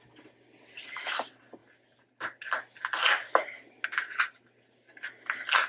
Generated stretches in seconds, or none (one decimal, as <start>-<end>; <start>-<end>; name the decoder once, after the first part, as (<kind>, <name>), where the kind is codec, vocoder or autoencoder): none